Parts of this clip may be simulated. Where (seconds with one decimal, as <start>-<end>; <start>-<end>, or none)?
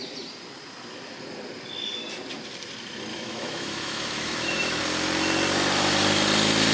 3.1-4.8